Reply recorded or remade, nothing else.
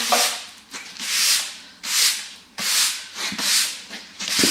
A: recorded